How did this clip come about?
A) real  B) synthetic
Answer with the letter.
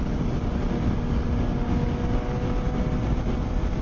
A